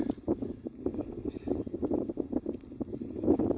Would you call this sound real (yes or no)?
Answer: yes